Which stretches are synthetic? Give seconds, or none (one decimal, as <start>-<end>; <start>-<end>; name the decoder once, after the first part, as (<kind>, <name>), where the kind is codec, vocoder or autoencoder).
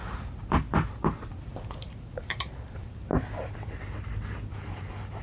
0.0-3.1 (vocoder, BigVGAN v2); 4.5-5.2